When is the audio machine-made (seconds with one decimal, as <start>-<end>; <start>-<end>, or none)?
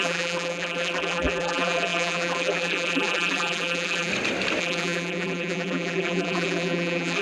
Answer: 0.0-4.1; 4.6-7.2